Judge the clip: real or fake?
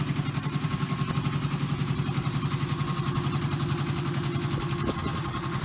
real